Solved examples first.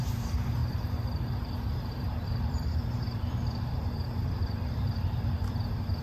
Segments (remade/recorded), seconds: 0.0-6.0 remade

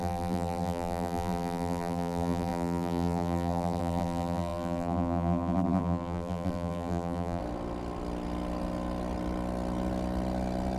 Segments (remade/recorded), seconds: 0.0-7.4 remade; 7.4-10.8 recorded

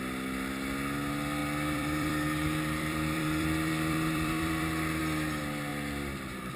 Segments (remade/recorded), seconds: 0.0-1.4 recorded; 1.4-5.0 remade; 5.0-6.6 recorded

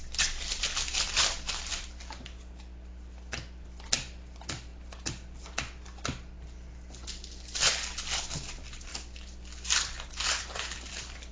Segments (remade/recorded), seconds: 0.0-4.7 remade; 4.7-8.3 recorded; 8.3-8.9 remade; 8.9-10.1 recorded; 10.1-11.3 remade

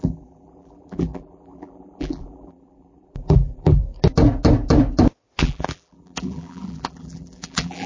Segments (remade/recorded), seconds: 0.0-3.8 remade; 3.8-5.4 recorded; 5.4-7.9 remade